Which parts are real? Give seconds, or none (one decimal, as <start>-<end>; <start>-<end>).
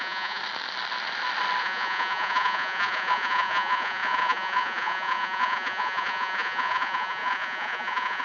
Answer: 0.4-1.6